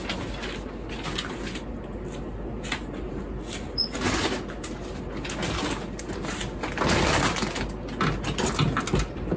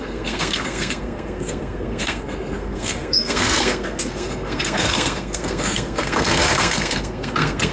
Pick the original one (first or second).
first